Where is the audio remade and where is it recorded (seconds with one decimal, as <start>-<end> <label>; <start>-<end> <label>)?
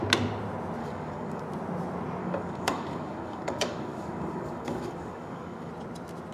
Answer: 0.0-0.8 recorded; 0.8-1.4 remade; 1.4-2.2 recorded; 2.2-5.7 remade; 5.7-6.3 recorded